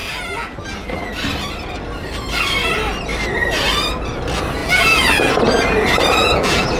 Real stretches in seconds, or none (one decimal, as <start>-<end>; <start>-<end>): 1.1-4.6; 5.3-6.2